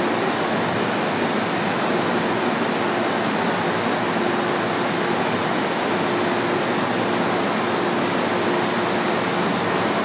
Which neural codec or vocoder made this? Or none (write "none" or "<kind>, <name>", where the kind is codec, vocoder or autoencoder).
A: none